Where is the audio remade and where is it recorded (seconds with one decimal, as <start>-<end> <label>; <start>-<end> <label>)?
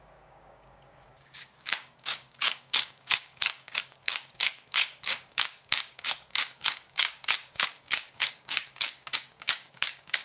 0.0-10.2 remade